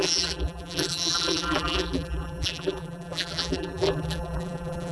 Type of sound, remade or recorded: remade